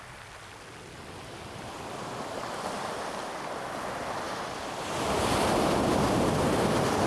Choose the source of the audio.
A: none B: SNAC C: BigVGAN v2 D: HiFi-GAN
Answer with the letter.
A